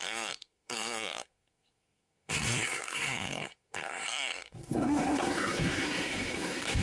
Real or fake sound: fake